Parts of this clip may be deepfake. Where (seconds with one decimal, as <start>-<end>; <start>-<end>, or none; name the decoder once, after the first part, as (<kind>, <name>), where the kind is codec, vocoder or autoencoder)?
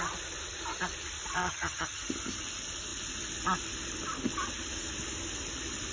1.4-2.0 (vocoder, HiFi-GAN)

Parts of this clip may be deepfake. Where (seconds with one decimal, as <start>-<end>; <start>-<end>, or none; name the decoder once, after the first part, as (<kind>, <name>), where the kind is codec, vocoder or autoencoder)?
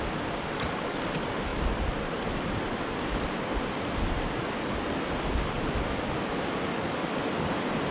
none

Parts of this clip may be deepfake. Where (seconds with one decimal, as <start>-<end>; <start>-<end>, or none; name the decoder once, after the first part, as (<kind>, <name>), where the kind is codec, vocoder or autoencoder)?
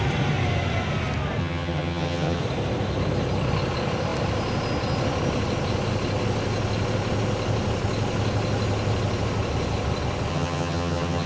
1.4-2.4 (vocoder, HiFi-GAN); 10.3-11.3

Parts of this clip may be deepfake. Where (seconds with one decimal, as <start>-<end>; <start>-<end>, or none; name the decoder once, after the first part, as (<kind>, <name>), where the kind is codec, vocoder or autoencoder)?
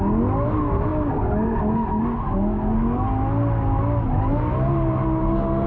none